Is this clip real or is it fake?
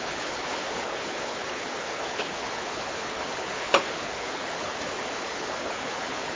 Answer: fake